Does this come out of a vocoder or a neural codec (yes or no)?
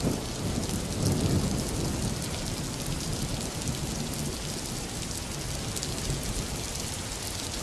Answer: no